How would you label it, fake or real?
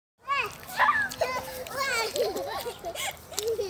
real